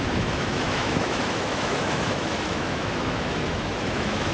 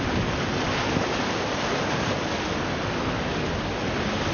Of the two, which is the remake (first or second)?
first